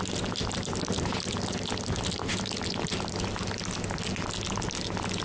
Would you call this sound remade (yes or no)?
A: no